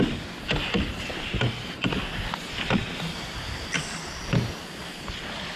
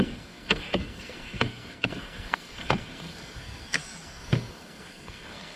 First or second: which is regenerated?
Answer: second